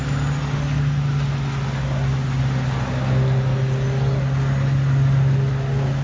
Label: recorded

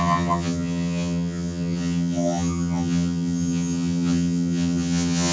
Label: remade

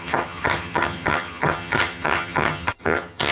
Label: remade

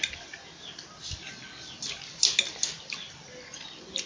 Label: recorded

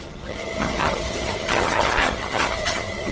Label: remade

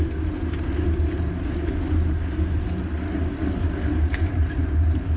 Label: recorded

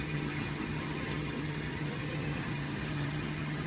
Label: remade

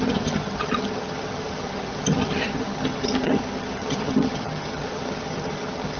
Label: remade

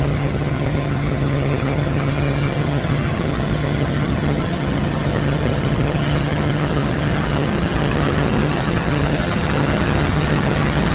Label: remade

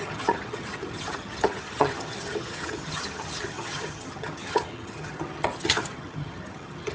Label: remade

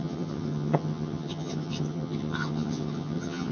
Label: remade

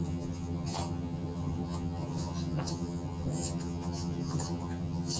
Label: remade